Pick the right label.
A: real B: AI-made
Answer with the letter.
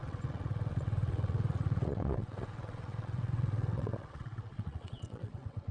B